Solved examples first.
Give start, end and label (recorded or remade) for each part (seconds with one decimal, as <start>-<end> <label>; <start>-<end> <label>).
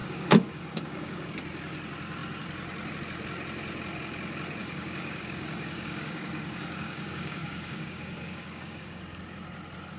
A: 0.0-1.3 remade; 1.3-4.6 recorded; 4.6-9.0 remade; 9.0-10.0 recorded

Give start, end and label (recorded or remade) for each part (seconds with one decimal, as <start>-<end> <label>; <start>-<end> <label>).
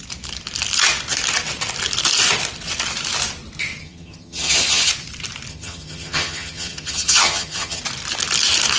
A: 0.0-3.8 recorded; 3.8-4.9 remade; 4.9-5.5 recorded; 5.5-7.8 remade; 7.8-8.8 recorded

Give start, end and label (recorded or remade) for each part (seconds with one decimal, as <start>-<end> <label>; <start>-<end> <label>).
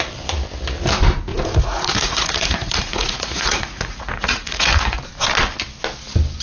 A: 0.0-1.3 recorded; 1.3-5.1 remade; 5.1-6.4 recorded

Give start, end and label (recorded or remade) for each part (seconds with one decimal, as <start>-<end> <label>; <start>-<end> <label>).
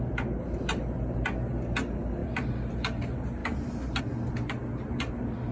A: 0.0-5.5 recorded